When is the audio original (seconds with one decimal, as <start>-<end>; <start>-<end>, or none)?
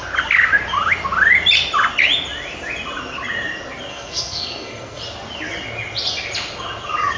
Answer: 0.0-3.9; 5.0-7.2